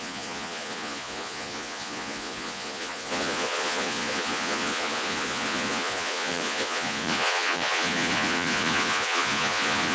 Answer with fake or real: fake